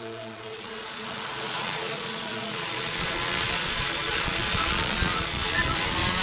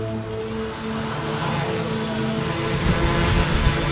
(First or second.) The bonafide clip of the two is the second